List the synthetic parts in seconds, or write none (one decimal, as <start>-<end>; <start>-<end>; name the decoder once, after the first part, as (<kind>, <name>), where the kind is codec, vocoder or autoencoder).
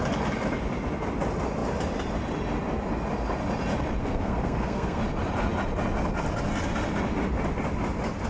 4.0-5.0 (codec, SNAC)